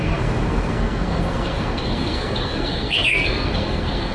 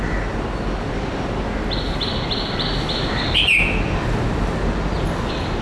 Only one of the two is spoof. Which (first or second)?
first